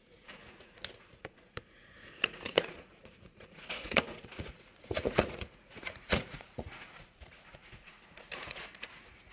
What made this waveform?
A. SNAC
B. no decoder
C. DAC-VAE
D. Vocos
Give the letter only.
D